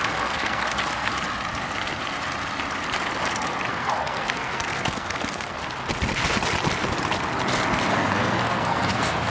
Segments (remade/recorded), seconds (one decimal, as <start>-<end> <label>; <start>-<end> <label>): 0.0-1.1 remade; 1.1-3.7 recorded; 3.7-5.6 remade; 5.6-7.9 recorded; 7.9-9.3 remade